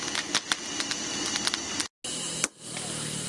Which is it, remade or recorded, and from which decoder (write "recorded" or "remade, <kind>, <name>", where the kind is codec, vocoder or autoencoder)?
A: recorded